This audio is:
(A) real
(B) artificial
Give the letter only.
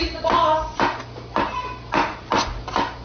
A